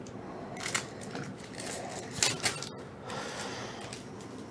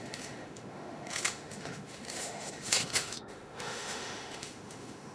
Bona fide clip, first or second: first